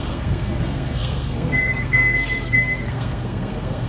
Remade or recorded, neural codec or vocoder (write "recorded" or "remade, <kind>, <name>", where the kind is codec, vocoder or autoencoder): remade, codec, SNAC